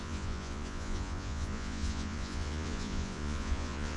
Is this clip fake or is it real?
fake